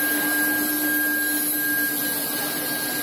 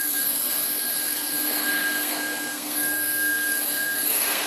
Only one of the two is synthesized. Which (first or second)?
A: second